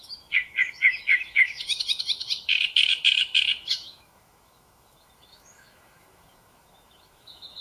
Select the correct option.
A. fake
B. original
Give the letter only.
A